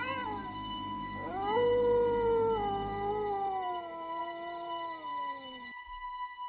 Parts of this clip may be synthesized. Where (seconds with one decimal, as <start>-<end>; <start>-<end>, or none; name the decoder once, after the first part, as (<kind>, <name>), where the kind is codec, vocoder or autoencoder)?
none